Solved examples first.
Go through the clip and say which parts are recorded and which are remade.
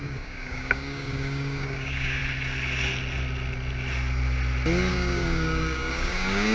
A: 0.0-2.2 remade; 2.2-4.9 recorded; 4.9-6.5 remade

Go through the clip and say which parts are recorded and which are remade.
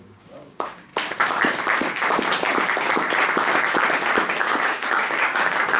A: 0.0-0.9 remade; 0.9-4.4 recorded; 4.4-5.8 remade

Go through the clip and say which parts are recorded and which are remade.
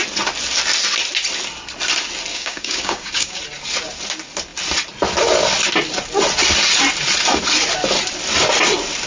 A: 0.0-2.3 recorded; 2.3-3.4 remade; 3.4-9.1 recorded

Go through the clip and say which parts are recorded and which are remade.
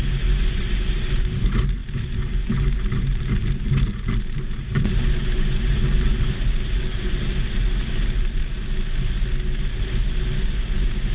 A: 0.0-11.1 recorded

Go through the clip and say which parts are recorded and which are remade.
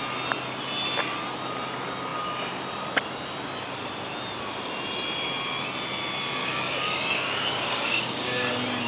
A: 0.0-6.4 recorded; 6.4-8.5 remade; 8.5-8.9 recorded